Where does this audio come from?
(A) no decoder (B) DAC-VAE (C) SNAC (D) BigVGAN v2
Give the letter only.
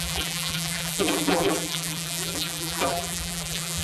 D